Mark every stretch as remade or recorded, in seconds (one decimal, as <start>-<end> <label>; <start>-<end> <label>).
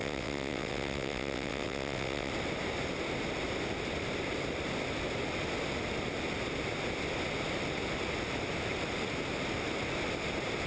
0.0-2.3 remade; 2.3-10.7 recorded